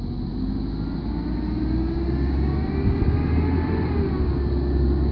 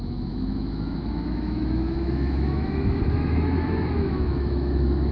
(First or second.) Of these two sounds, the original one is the first